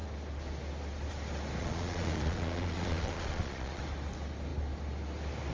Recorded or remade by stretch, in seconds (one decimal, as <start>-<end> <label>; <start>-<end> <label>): 0.0-1.6 recorded; 1.6-3.8 remade; 3.8-5.5 recorded